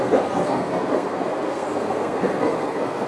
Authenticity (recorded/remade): remade